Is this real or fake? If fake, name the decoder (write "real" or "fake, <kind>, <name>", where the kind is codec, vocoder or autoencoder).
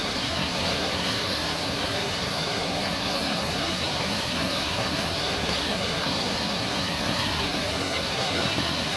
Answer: fake, codec, SNAC